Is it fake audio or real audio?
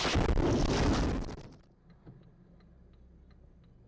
real